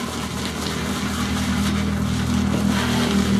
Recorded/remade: recorded